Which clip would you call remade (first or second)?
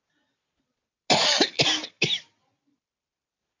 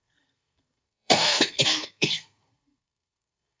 second